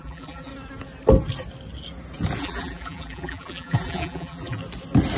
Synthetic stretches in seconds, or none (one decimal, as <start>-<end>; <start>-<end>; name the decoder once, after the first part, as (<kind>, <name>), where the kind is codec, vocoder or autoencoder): 0.0-0.5 (vocoder, BigVGAN v2); 2.4-4.6